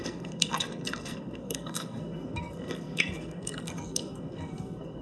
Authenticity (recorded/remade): remade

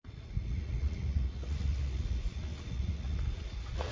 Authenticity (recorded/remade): remade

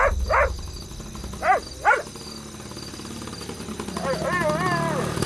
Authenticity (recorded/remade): recorded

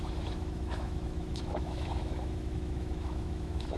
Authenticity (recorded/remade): remade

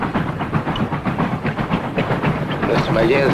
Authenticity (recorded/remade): remade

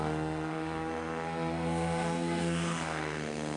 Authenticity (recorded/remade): remade